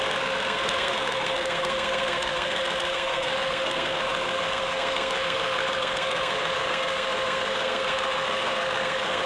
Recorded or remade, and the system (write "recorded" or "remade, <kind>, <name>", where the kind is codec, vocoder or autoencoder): remade, codec, SNAC